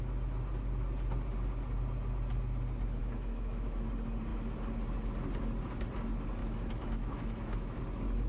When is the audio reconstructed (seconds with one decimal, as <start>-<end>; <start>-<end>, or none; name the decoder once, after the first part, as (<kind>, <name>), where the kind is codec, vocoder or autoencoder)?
3.0-3.9 (autoencoder, DAC-VAE); 6.4-7.8